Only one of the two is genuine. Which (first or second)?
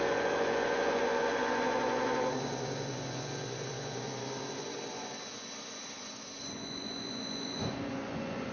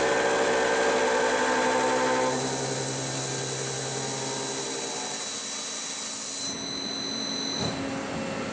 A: second